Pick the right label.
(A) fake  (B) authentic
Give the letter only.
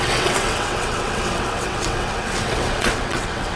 A